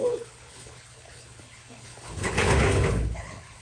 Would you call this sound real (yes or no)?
no